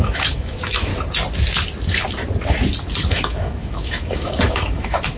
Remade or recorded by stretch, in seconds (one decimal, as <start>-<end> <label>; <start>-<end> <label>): 0.0-0.9 remade; 0.9-3.1 recorded; 3.1-5.2 remade